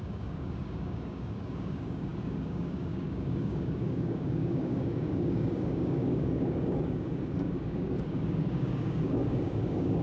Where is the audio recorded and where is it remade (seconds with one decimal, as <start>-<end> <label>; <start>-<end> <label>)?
0.0-10.0 remade